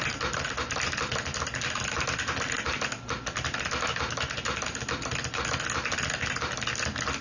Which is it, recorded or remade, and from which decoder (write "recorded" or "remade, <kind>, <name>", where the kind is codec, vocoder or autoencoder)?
recorded